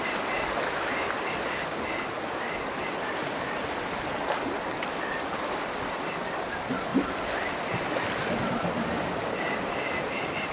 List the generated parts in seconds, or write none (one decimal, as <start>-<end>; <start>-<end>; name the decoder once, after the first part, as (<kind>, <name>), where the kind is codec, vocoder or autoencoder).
none